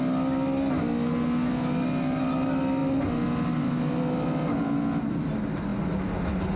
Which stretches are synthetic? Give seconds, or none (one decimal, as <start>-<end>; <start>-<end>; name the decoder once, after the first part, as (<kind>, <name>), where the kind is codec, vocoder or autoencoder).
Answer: none